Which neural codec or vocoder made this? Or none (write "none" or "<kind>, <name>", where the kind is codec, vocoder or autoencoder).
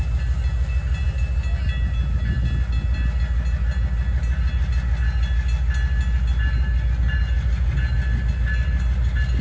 none